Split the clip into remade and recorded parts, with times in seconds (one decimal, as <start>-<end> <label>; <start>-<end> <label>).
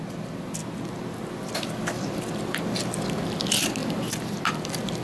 0.0-5.0 recorded